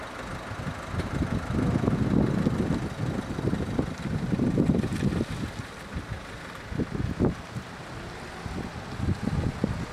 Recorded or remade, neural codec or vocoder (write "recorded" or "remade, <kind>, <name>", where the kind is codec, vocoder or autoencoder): recorded